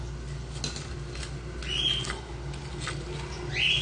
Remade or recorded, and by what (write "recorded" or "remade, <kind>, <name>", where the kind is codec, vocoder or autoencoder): recorded